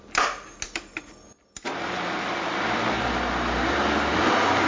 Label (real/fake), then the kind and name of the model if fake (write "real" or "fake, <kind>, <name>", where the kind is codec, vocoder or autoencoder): real